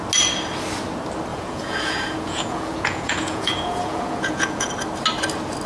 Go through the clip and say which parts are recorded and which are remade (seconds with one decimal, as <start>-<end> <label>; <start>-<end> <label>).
0.0-1.3 recorded; 1.3-4.7 remade; 4.7-5.7 recorded